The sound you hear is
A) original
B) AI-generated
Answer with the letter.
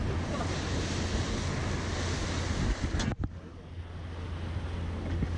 A